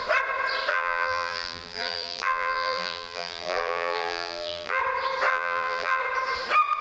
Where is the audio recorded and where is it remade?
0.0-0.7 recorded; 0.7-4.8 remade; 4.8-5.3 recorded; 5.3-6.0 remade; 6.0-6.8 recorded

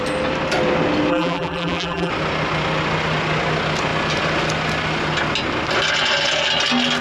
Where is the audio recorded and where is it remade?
0.0-1.1 recorded; 1.1-2.1 remade; 2.1-7.0 recorded

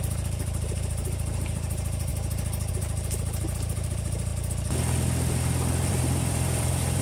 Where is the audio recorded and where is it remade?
0.0-2.1 remade; 2.1-2.7 recorded; 2.7-4.3 remade; 4.3-5.9 recorded; 5.9-7.0 remade

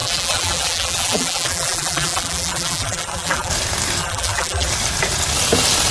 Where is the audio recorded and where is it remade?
0.0-3.5 remade; 3.5-4.0 recorded; 4.0-4.7 remade; 4.7-5.9 recorded

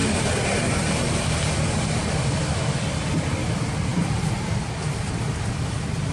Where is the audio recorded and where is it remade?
0.0-1.2 remade; 1.2-6.1 recorded